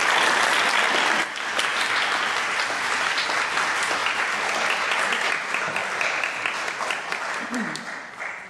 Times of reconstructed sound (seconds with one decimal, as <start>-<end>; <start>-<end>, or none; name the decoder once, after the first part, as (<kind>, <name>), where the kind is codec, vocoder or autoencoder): 4.0-5.3 (vocoder, BigVGAN v2); 5.8-8.5